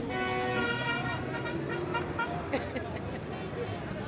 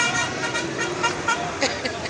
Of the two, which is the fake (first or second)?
second